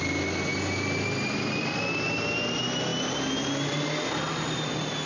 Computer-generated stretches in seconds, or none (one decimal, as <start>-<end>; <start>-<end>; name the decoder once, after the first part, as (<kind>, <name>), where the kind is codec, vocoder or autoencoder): none